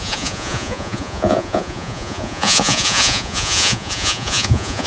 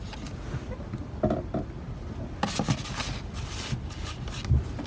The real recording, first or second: second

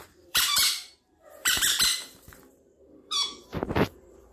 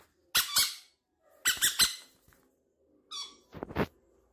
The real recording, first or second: second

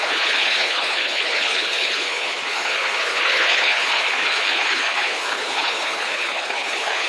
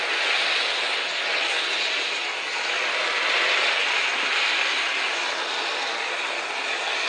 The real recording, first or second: second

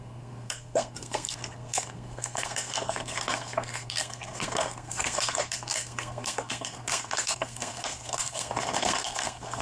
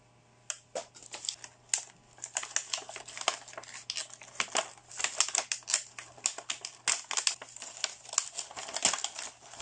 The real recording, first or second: second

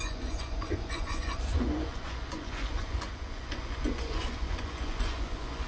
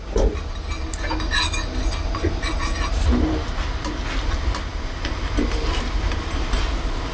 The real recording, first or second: second